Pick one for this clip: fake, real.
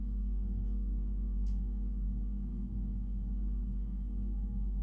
fake